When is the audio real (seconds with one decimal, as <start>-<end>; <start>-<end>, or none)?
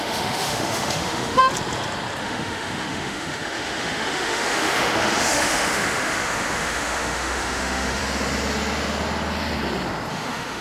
1.4-2.2; 8.0-10.1